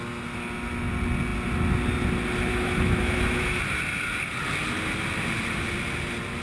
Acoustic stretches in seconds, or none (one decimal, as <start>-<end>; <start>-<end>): 0.0-2.5; 3.6-6.4